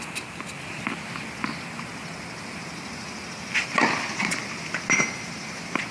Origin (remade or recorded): recorded